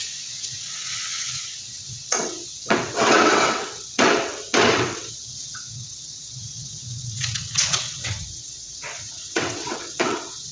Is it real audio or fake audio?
fake